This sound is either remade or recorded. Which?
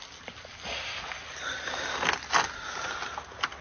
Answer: recorded